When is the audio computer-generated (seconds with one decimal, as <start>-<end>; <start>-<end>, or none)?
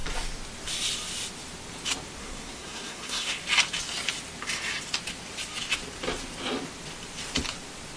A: 2.2-3.4